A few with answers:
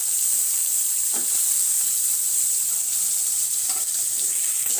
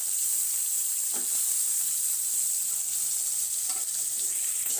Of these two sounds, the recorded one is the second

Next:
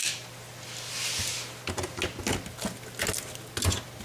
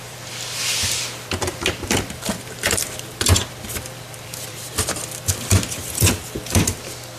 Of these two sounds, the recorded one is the first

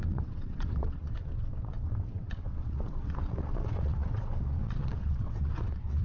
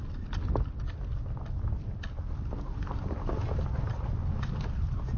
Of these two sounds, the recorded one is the second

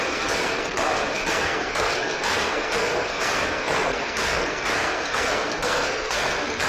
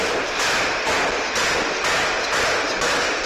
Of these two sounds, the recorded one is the second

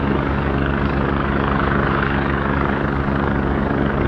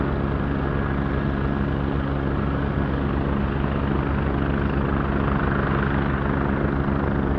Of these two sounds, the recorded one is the second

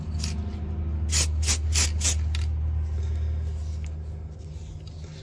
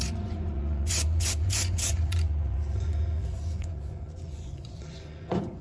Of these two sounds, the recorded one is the first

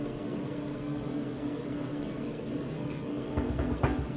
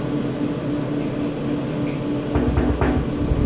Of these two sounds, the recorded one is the second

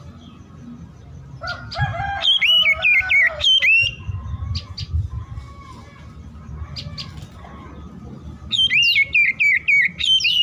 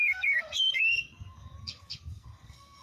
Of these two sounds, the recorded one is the first